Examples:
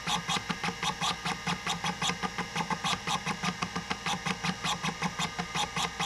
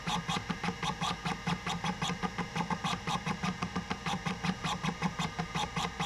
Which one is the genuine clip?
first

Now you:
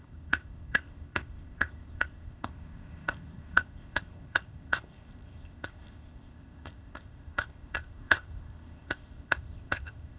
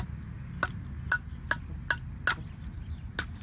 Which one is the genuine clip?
second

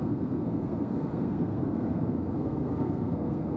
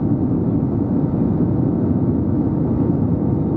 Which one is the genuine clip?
second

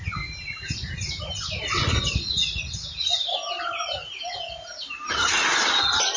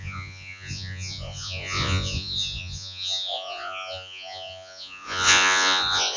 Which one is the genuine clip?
first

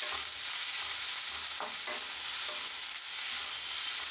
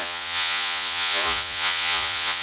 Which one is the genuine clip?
first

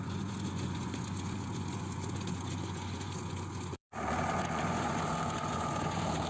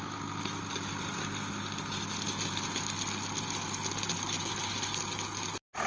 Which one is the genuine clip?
second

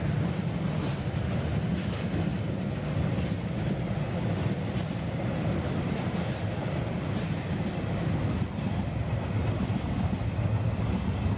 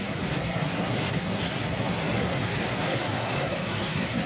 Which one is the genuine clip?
first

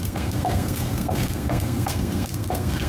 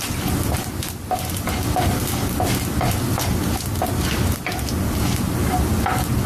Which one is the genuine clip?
second